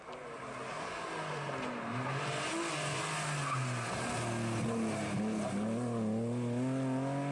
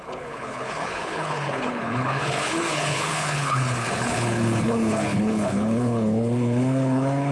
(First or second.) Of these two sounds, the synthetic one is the second